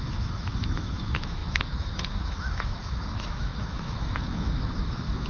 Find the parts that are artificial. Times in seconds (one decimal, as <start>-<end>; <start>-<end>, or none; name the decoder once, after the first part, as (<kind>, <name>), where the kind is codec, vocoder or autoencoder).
0.0-5.3 (autoencoder, DAC-VAE)